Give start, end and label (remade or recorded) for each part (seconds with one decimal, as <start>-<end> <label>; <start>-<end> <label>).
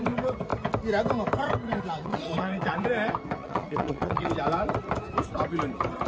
0.0-2.0 recorded; 2.0-2.8 remade; 2.8-3.4 recorded; 3.4-4.3 remade; 4.3-6.1 recorded